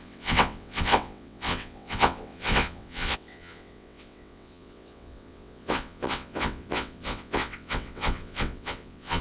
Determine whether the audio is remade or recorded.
remade